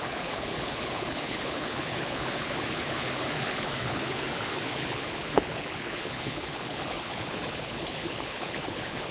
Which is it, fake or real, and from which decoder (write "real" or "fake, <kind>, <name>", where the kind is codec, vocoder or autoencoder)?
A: fake, codec, HILCodec